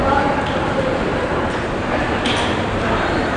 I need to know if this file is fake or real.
fake